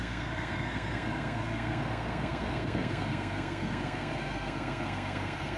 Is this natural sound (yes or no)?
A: no